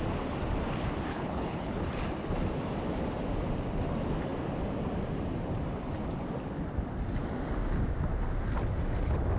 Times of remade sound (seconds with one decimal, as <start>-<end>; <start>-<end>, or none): 1.1-1.8